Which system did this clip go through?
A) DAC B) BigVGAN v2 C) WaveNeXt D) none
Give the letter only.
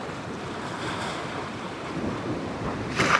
B